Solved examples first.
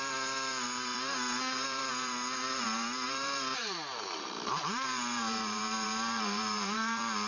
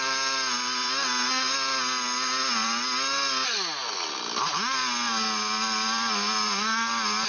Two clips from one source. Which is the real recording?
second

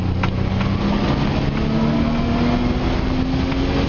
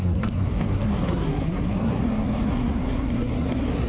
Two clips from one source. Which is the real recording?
first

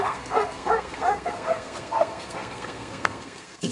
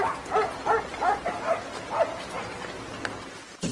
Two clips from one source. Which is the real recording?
second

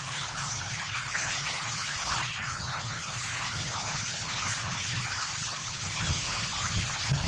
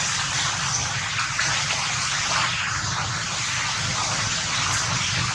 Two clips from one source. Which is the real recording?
second